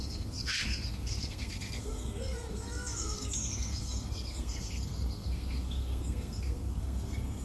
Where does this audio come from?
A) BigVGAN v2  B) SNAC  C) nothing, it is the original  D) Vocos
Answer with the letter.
B